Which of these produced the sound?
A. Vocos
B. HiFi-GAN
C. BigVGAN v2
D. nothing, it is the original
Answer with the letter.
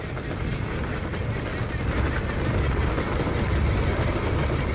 D